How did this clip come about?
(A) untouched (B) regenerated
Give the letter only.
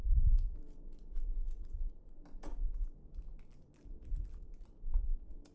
A